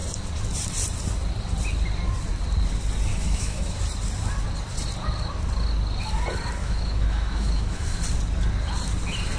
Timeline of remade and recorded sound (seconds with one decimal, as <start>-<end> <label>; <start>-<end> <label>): 0.0-3.1 recorded; 3.1-3.8 remade; 3.8-6.6 recorded; 6.6-8.0 remade; 8.0-9.4 recorded